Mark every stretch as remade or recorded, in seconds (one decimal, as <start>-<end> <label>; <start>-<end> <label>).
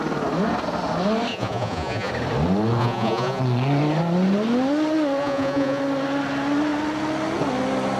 0.0-1.3 recorded; 1.3-2.1 remade; 2.1-2.8 recorded; 2.8-3.4 remade; 3.4-5.2 recorded; 5.2-5.8 remade; 5.8-8.0 recorded